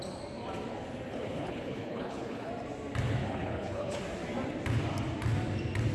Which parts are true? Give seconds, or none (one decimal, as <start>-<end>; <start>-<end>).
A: 0.0-1.1; 2.5-3.2; 4.0-5.9